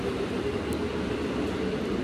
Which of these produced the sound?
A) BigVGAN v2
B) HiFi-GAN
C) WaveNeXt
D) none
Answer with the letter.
D